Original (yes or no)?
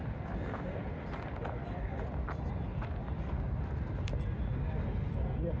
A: yes